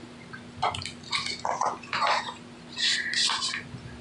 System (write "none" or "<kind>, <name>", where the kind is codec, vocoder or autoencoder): none